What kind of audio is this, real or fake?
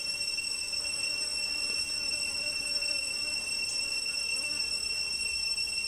real